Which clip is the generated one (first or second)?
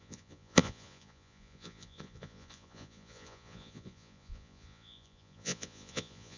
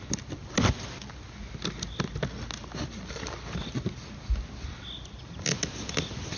first